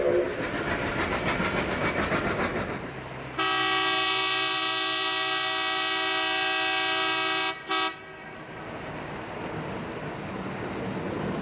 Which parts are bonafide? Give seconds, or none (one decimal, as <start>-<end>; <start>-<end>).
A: 0.0-11.4